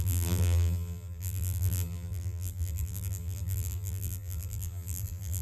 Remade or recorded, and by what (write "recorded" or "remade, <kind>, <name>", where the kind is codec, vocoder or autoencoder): remade, vocoder, BigVGAN v2